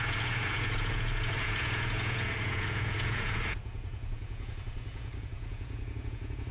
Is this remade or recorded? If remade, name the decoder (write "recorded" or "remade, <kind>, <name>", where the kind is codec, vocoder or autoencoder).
remade, vocoder, Vocos